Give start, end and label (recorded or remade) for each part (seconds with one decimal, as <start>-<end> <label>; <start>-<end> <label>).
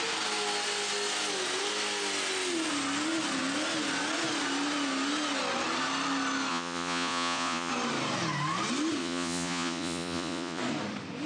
0.0-6.5 recorded; 6.5-7.7 remade; 7.7-9.0 recorded; 9.0-10.6 remade; 10.6-11.3 recorded